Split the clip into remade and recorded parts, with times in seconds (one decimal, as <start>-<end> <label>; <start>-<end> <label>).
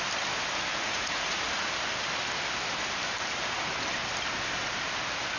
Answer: 0.0-0.7 recorded; 0.7-1.7 remade; 1.7-5.4 recorded